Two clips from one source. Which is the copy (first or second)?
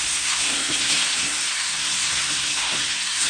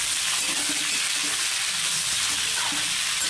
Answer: first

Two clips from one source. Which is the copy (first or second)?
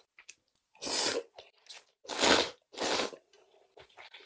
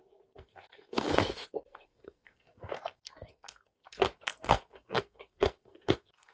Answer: second